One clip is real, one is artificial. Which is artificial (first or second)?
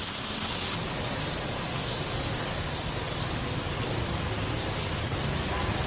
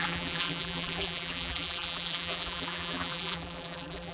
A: second